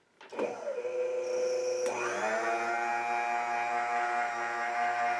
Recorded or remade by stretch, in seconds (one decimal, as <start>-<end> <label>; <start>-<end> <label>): 0.0-5.2 recorded